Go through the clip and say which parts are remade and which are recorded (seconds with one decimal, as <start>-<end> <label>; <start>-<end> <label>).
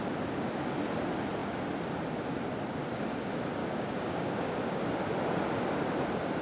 0.0-3.6 recorded; 3.6-4.8 remade; 4.8-6.4 recorded